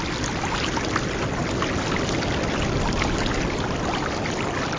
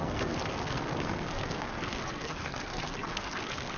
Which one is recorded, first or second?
first